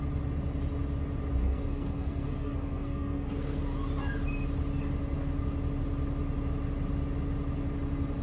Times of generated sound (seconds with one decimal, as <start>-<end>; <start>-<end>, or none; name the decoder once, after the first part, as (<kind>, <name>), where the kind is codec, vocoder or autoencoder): 1.4-3.6 (codec, SNAC)